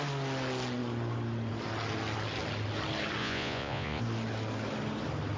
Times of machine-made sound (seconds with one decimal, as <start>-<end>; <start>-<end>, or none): 3.2-4.0